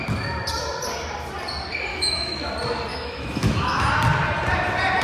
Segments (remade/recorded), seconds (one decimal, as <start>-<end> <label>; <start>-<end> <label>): 0.0-1.9 recorded; 1.9-2.5 remade; 2.5-2.9 recorded; 2.9-3.9 remade; 3.9-5.0 recorded